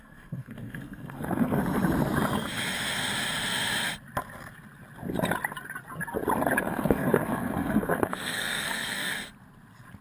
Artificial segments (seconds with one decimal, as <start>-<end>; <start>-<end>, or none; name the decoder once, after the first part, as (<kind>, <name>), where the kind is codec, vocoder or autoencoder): 0.0-1.6 (codec, SNAC); 6.6-9.1